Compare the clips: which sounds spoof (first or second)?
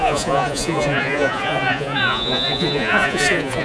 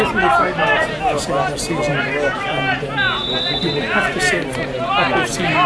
first